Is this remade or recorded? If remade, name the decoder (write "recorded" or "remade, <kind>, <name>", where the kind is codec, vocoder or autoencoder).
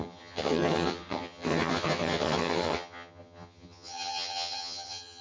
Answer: remade, vocoder, HiFi-GAN